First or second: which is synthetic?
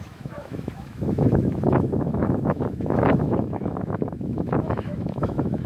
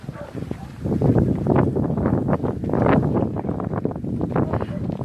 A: first